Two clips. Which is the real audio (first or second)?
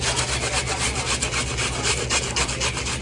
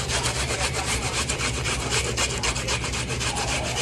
first